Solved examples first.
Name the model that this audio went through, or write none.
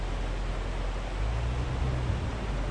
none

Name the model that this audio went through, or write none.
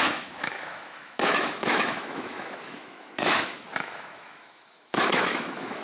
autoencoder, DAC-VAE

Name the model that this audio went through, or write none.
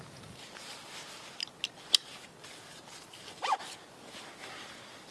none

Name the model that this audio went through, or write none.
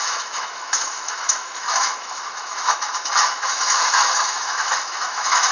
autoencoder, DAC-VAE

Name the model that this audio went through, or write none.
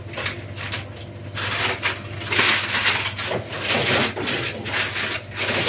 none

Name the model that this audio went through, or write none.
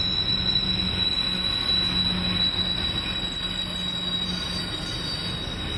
none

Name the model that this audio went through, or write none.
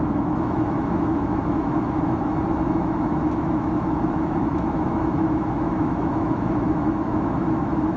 autoencoder, DAC-VAE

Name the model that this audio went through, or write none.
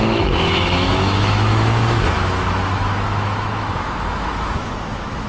autoencoder, DAC-VAE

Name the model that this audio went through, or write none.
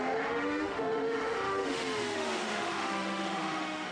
autoencoder, DAC-VAE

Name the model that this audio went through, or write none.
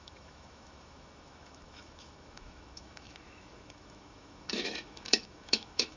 autoencoder, DAC-VAE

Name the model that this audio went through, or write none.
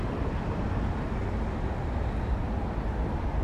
none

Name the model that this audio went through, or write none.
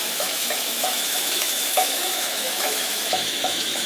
autoencoder, DAC-VAE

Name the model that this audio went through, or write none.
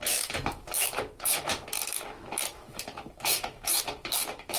autoencoder, DAC-VAE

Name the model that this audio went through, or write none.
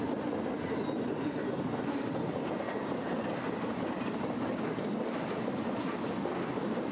none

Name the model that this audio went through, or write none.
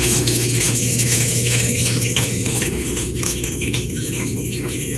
autoencoder, DAC-VAE